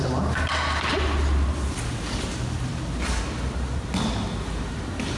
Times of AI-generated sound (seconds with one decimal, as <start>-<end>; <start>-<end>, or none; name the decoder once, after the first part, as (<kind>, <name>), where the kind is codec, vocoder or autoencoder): none